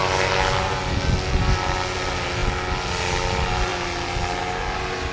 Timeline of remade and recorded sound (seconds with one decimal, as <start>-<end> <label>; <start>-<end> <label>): 0.0-5.1 recorded